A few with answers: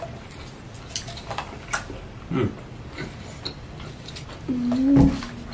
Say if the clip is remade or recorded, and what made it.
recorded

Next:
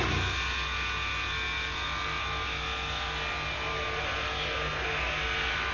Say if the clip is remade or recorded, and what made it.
recorded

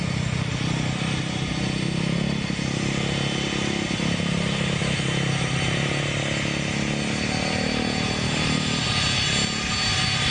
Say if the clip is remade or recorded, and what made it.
recorded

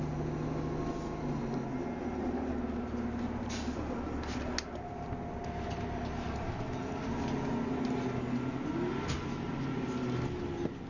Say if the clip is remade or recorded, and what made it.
recorded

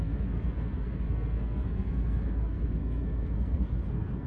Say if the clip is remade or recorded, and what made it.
remade, codec, SNAC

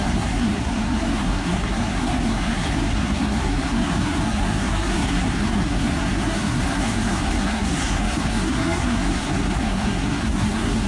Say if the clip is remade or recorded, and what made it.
remade, codec, SNAC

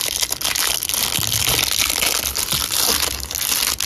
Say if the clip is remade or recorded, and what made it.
recorded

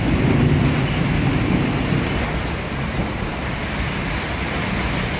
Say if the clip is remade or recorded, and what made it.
recorded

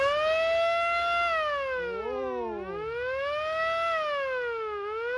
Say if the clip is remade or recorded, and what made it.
recorded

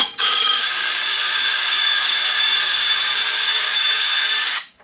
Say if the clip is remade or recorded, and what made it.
remade, codec, DAC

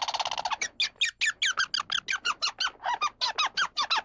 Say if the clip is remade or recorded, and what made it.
recorded